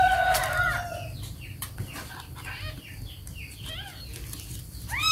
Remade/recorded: remade